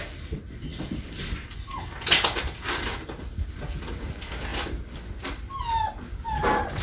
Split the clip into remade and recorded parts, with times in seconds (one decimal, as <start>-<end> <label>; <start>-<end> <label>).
0.0-6.8 recorded